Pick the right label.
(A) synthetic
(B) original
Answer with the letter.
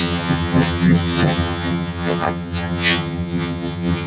A